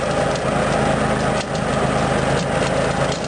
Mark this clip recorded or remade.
recorded